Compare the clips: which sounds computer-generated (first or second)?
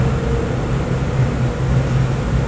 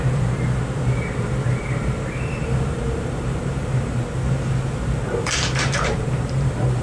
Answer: second